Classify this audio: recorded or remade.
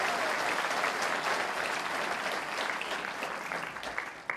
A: recorded